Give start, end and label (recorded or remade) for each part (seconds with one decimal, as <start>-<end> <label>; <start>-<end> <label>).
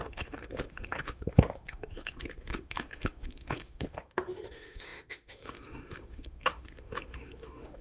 0.0-7.8 remade